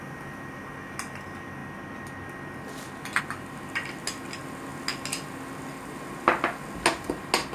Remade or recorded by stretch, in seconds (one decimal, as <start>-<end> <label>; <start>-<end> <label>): 0.0-7.5 recorded